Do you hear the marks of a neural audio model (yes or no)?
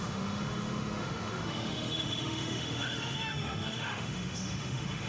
yes